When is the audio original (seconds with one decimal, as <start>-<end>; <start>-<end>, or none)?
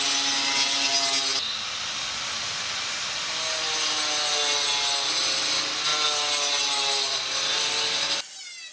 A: 0.0-8.7